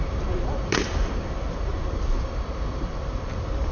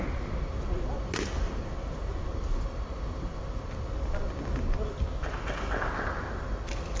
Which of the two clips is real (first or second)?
second